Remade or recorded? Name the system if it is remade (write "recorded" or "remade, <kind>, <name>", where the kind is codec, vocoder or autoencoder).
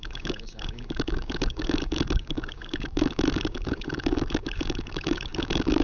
remade, codec, DAC